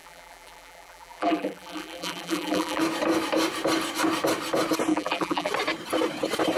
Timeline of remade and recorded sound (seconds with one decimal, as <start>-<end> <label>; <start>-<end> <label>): 0.0-2.8 remade; 2.8-4.9 recorded; 4.9-5.5 remade; 5.5-6.6 recorded